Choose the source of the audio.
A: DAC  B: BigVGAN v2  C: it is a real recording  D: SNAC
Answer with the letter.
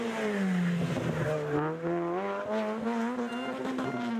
C